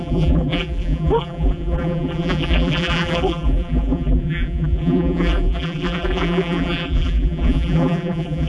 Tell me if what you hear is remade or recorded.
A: remade